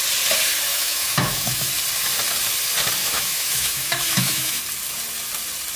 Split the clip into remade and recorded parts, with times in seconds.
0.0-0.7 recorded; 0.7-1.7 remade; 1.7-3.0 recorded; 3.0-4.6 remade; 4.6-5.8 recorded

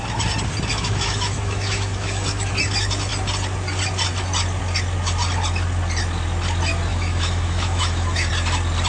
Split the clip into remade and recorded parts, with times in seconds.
0.0-0.7 recorded; 0.7-2.5 remade; 2.5-6.9 recorded; 6.9-8.3 remade; 8.3-8.9 recorded

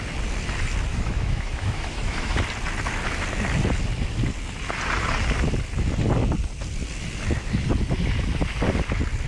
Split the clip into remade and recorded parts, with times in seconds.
0.0-0.9 recorded; 0.9-2.4 remade; 2.4-9.3 recorded

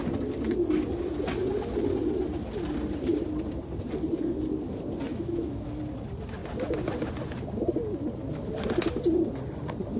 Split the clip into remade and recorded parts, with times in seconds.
0.0-5.1 recorded; 5.1-5.7 remade; 5.7-10.0 recorded